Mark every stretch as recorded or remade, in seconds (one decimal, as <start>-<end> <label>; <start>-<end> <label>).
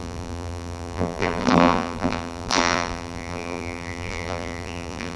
0.0-5.2 remade